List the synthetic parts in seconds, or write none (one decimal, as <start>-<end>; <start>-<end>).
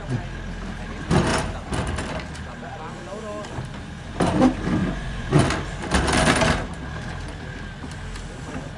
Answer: 4.8-5.4